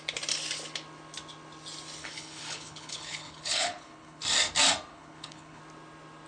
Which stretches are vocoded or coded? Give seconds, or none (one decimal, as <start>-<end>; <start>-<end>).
2.0-4.2; 4.9-5.6